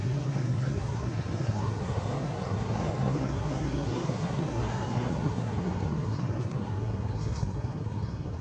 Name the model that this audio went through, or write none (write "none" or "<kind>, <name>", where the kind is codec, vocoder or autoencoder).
codec, SNAC